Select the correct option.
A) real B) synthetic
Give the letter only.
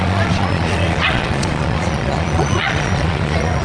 B